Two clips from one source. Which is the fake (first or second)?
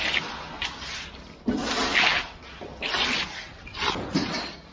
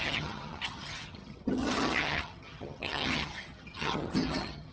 second